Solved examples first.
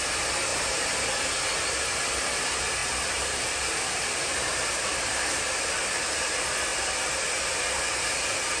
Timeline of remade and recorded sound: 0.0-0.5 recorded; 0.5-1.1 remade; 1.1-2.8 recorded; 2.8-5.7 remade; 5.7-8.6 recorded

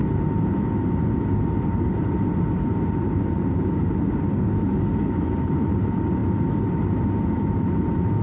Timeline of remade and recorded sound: 0.0-8.2 recorded

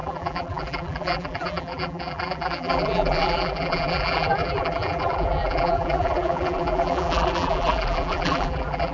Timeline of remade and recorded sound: 0.0-8.9 remade

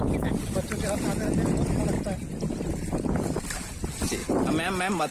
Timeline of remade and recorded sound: 0.0-5.1 recorded

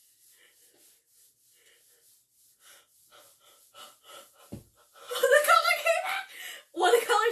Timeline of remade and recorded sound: 0.0-7.3 recorded

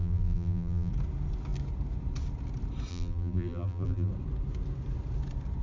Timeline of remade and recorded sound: 0.0-0.9 remade; 0.9-2.9 recorded; 2.9-4.1 remade; 4.1-5.6 recorded

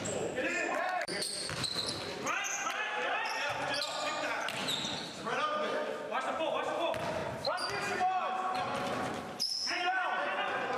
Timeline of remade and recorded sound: 0.0-0.4 recorded; 0.4-4.1 remade; 4.1-10.8 recorded

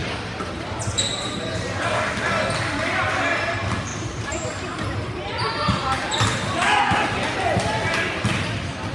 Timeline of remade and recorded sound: 0.0-1.9 remade; 1.9-3.9 recorded; 3.9-6.8 remade; 6.8-8.9 recorded